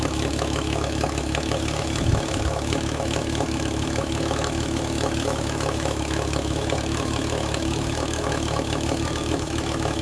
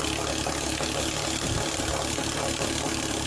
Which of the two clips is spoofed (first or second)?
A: first